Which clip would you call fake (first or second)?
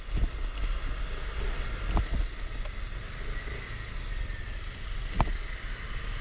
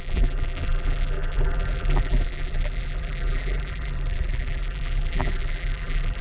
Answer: second